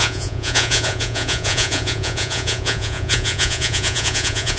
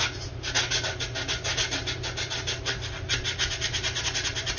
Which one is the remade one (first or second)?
first